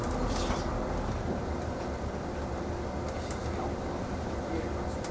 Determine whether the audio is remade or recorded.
recorded